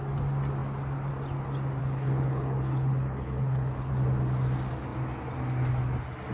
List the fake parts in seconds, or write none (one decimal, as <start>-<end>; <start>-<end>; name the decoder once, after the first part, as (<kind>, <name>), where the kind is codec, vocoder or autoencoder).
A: 1.8-3.9 (codec, HILCodec)